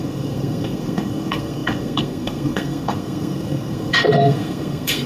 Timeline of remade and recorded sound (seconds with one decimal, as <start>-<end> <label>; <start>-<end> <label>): 0.0-5.1 remade